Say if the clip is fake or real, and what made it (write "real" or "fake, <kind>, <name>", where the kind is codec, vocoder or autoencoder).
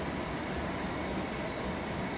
real